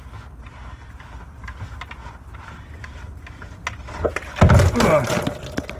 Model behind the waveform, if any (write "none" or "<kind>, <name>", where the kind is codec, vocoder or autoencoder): none